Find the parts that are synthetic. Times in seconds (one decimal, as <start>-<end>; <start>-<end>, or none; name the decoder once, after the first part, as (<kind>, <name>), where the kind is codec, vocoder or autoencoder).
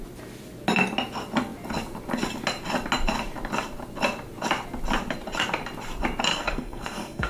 6.3-7.3 (codec, SNAC)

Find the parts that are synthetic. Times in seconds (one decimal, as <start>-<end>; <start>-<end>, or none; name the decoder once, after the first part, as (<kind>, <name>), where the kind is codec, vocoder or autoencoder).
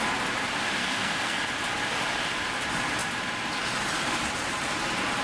0.8-1.4 (codec, SNAC)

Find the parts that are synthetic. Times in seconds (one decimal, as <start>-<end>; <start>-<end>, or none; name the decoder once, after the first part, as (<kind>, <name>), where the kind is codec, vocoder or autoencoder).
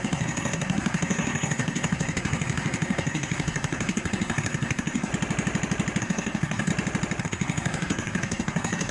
0.0-5.1 (codec, SNAC); 6.0-6.7; 7.2-8.9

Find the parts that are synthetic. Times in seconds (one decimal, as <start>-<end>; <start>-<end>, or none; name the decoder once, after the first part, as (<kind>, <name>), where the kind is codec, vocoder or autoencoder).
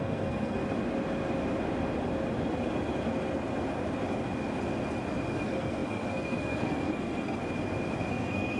0.0-0.6 (codec, SNAC); 5.3-7.4; 8.1-8.6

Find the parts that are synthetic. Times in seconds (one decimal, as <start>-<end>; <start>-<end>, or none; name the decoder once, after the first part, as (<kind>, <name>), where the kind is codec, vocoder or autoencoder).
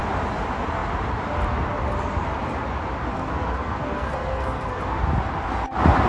3.1-4.8 (codec, SNAC)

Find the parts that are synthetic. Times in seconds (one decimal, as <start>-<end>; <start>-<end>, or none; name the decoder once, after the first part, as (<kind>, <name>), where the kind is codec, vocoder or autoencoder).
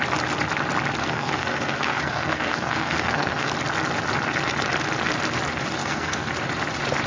1.0-3.5 (codec, SNAC); 5.8-6.3